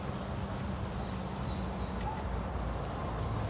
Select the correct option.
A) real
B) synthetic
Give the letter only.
A